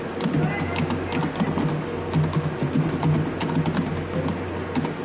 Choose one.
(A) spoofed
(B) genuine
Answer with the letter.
B